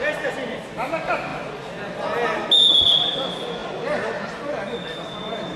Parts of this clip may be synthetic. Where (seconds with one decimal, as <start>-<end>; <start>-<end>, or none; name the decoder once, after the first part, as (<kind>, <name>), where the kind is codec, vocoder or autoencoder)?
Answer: none